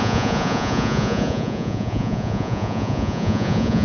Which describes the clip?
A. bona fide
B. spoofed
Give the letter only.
B